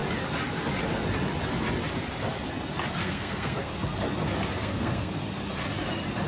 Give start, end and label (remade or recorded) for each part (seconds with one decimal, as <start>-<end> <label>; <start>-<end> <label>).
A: 0.0-3.0 recorded; 3.0-3.7 remade; 3.7-4.6 recorded; 4.6-5.1 remade; 5.1-6.3 recorded